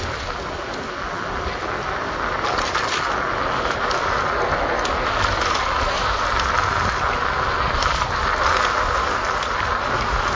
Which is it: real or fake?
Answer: real